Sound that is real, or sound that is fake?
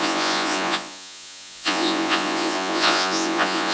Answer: fake